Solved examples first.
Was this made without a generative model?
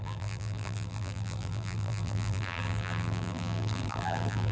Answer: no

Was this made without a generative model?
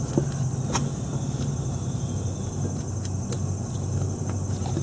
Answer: yes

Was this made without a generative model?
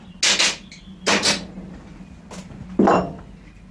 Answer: yes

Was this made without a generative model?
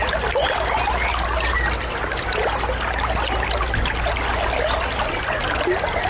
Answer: yes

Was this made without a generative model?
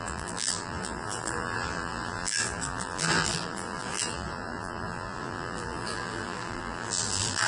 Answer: no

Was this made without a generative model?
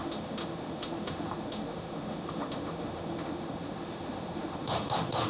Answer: no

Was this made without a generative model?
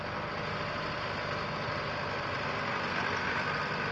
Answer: yes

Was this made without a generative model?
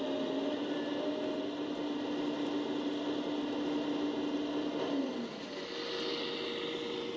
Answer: yes